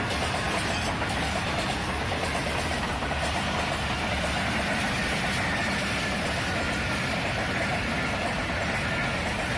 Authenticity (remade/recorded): recorded